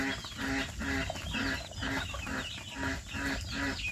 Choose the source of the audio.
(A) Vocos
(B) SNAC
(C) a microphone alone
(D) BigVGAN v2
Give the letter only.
C